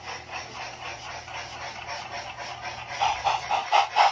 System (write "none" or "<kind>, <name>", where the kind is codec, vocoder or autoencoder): none